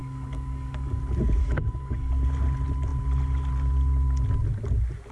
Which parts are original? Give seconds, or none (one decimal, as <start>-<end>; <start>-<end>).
1.0-1.4; 2.1-5.1